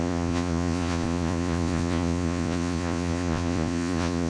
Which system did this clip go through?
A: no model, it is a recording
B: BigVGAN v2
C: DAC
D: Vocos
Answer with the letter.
D